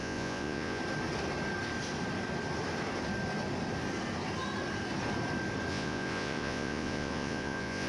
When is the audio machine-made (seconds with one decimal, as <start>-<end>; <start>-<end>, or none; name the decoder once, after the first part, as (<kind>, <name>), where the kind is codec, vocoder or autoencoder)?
0.0-0.8 (vocoder, Vocos); 5.7-7.9